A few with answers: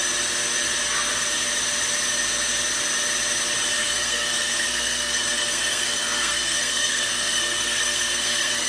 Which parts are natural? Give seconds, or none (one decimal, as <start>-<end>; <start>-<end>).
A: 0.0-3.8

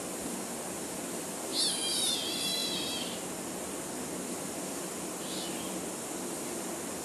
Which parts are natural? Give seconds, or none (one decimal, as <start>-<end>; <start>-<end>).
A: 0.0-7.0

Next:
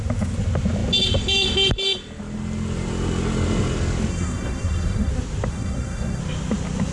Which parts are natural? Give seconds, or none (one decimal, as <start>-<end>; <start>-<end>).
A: 0.0-4.1; 5.1-5.5; 6.2-6.9

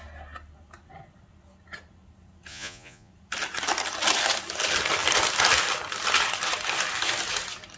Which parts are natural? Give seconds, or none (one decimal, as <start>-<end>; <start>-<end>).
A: 0.0-2.5; 3.1-7.8

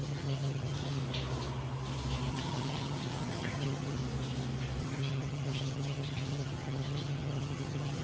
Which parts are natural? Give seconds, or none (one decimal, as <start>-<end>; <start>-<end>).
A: 1.0-2.3; 4.0-4.8

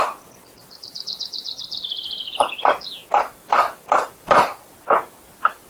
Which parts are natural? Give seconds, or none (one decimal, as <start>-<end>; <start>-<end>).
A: 0.0-0.6; 2.5-3.0; 4.4-5.7

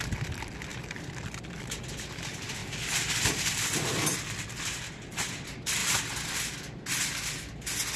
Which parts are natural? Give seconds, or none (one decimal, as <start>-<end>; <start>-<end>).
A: 0.0-0.7; 1.8-2.6; 4.8-8.0

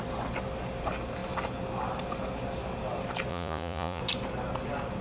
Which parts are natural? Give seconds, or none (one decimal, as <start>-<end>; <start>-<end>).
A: 0.0-3.3; 4.0-5.0